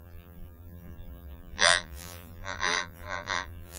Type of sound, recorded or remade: remade